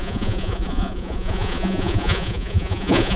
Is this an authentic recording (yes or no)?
no